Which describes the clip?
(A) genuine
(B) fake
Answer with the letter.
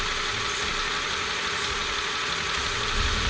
A